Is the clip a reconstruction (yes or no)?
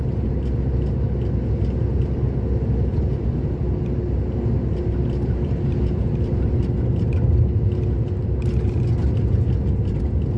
no